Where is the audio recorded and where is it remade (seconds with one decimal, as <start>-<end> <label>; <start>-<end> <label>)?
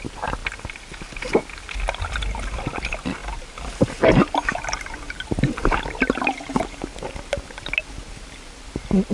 0.0-9.1 recorded